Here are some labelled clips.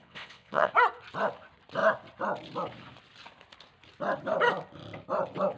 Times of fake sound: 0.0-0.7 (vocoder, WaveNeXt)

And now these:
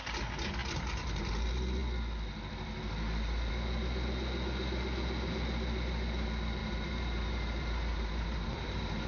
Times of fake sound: 0.6-1.3 (vocoder, BigVGAN v2); 6.6-9.1

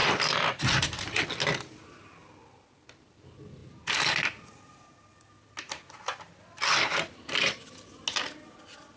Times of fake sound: none

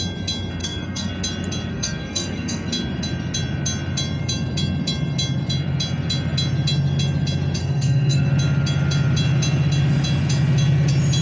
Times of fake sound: 0.6-1.1 (codec, SNAC); 1.7-2.7; 7.6-8.3